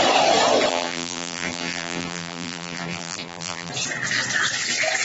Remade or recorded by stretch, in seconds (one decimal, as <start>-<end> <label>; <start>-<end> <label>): 0.0-0.7 recorded; 0.7-3.7 remade; 3.7-5.0 recorded